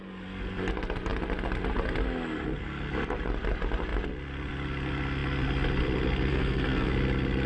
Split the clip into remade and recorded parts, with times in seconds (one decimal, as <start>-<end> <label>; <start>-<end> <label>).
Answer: 0.0-6.3 recorded; 6.3-6.9 remade; 6.9-7.5 recorded